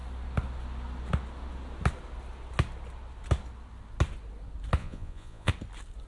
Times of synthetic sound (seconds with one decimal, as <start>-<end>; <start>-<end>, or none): 4.8-5.5